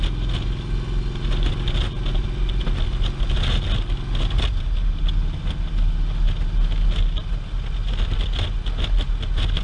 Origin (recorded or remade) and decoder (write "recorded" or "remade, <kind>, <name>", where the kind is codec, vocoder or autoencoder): recorded